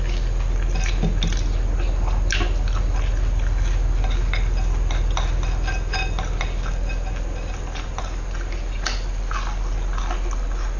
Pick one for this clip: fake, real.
real